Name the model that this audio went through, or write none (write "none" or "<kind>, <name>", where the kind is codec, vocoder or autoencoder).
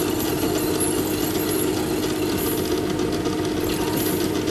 none